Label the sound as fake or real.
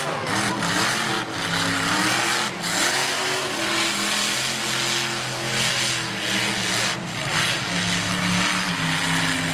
real